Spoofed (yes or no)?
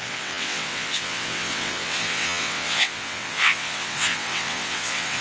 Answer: yes